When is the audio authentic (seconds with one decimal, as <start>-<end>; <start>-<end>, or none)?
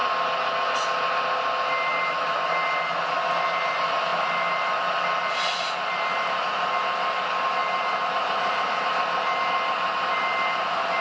0.0-11.0